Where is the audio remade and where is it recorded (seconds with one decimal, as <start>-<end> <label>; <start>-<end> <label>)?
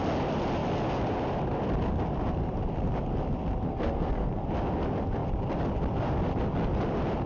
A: 0.0-3.7 recorded; 3.7-4.5 remade; 4.5-7.3 recorded